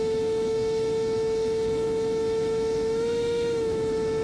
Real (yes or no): no